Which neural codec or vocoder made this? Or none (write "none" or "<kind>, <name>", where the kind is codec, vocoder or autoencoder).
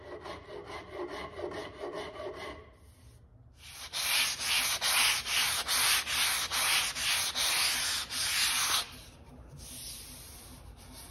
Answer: none